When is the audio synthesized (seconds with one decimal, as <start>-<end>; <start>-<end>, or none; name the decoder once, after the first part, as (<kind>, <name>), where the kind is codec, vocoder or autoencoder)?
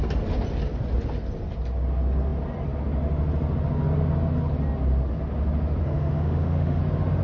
5.8-6.8 (autoencoder, DAC-VAE)